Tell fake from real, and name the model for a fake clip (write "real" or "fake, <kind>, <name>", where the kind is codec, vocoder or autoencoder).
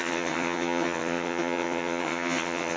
fake, vocoder, HiFi-GAN